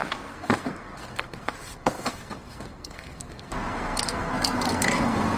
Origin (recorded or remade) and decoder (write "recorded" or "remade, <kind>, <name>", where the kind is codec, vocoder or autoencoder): remade, codec, SNAC